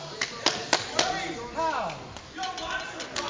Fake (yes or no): no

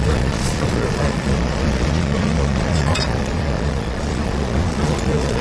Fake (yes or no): yes